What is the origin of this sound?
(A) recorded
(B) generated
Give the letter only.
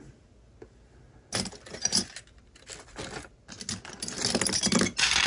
A